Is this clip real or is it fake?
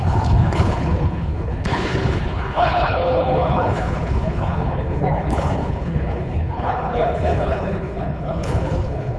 fake